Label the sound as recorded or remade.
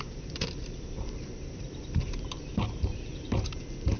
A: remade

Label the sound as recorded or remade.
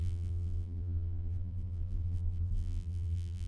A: remade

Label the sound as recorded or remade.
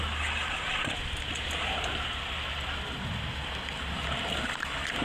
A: recorded